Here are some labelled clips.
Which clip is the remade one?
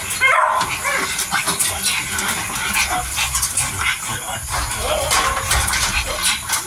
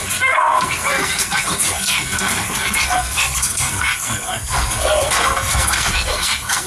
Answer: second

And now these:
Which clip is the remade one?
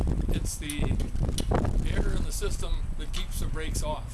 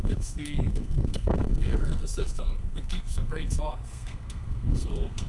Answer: second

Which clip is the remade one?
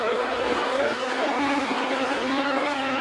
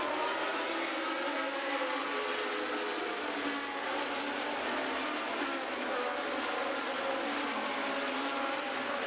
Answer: first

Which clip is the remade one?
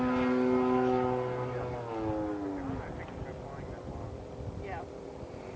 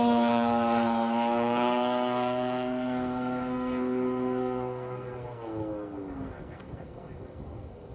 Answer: second